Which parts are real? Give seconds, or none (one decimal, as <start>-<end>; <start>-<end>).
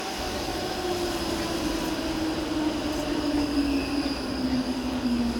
0.5-3.2; 3.8-4.3